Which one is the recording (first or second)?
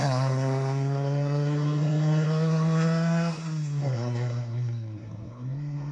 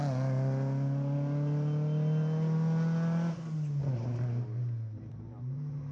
second